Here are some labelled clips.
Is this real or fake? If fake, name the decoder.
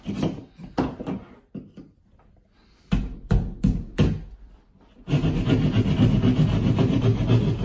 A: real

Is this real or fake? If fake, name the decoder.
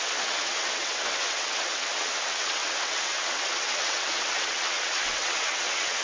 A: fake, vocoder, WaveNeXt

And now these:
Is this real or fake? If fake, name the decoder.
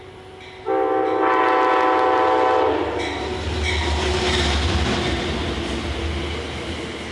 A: real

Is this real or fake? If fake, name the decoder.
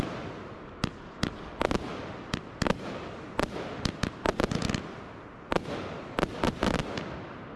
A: real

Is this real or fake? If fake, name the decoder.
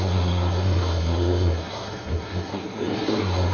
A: fake, codec, SNAC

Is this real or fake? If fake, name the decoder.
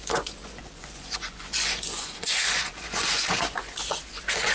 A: fake, vocoder, Vocos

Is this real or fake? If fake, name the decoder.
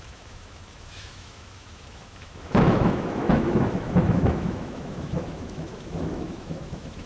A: fake, autoencoder, DAC-VAE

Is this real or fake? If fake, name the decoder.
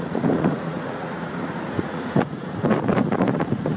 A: fake, vocoder, Vocos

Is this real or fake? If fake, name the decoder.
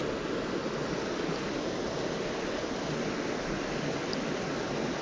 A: real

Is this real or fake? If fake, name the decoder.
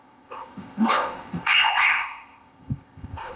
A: fake, codec, ZipCodec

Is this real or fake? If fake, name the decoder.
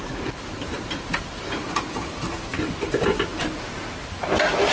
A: real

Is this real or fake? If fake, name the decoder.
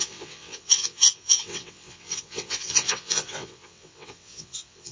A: fake, vocoder, WaveNeXt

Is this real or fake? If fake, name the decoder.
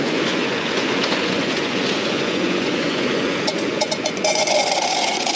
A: fake, vocoder, Vocos